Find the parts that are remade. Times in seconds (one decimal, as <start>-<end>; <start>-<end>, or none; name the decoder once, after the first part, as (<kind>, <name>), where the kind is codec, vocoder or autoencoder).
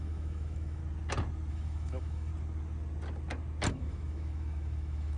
0.0-0.8 (autoencoder, DAC-VAE); 1.5-2.3; 3.7-5.2